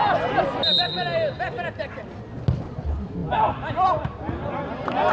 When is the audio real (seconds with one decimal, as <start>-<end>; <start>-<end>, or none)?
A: 0.0-5.1